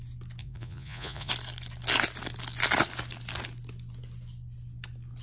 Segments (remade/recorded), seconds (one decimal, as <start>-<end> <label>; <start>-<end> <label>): 0.0-0.4 recorded; 0.4-1.3 remade; 1.3-5.2 recorded